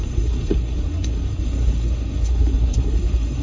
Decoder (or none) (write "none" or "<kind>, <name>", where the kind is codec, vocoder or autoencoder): codec, SNAC